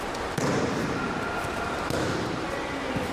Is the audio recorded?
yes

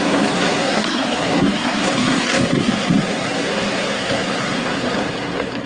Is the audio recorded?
no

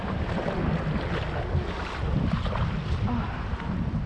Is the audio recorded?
yes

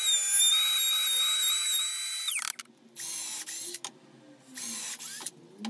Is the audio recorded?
yes